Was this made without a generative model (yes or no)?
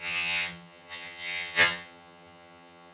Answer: no